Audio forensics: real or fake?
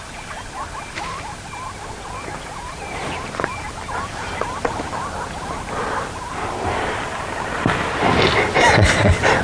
real